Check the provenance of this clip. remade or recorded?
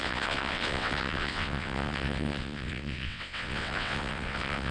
remade